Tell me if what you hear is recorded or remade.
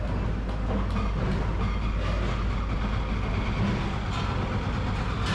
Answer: recorded